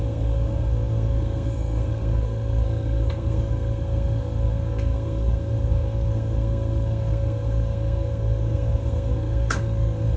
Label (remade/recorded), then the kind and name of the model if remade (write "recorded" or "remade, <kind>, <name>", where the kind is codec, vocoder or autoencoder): remade, codec, SNAC